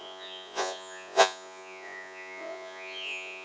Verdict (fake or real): fake